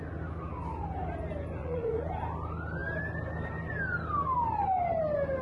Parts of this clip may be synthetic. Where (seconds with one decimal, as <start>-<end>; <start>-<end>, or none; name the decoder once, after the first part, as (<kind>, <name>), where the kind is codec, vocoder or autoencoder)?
1.6-2.1 (vocoder, Vocos)